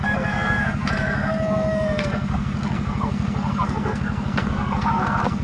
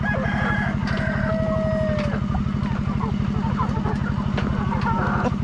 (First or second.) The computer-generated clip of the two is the first